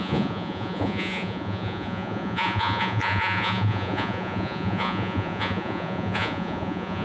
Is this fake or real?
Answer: fake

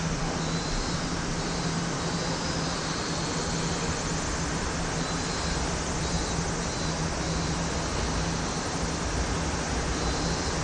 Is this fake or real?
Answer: real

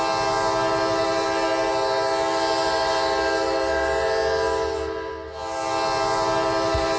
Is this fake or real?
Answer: real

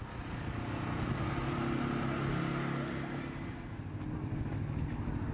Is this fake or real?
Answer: real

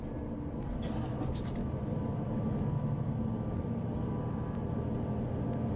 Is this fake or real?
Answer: real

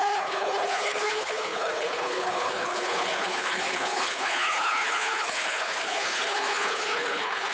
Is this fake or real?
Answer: fake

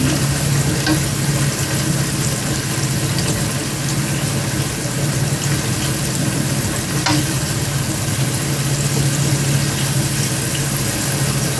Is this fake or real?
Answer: real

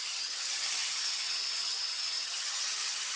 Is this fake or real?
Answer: fake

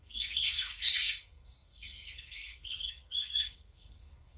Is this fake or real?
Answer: fake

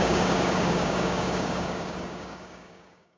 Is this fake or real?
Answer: fake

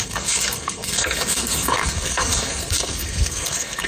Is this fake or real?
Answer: fake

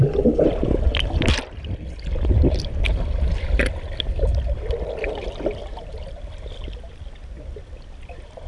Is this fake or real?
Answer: real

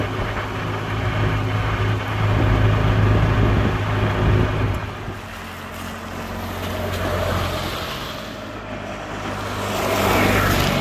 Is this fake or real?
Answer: real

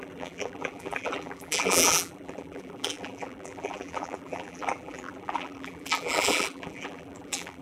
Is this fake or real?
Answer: fake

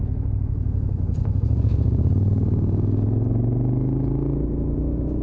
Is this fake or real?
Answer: real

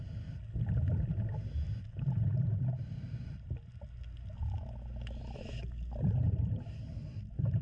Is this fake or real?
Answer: real